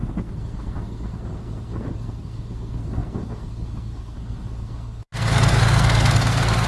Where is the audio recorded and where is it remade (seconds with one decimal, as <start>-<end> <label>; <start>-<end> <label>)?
0.0-6.7 remade